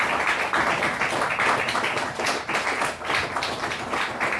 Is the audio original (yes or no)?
yes